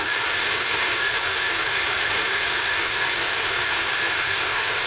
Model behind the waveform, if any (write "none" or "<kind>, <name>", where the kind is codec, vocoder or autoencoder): autoencoder, DAC-VAE